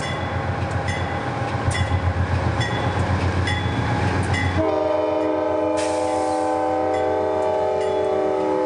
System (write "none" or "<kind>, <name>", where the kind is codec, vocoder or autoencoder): none